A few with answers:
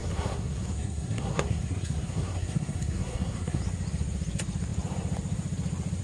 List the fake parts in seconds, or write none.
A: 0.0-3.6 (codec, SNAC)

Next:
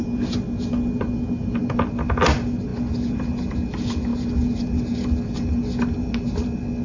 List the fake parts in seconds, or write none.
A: none

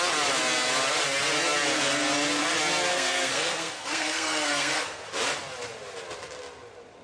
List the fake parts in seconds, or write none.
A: 2.9-5.0 (codec, SNAC)

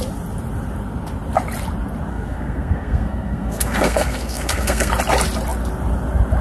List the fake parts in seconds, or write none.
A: 2.1-4.9 (codec, SNAC)